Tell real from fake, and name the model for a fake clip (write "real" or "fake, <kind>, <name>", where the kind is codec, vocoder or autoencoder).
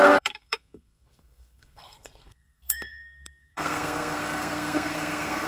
fake, codec, SNAC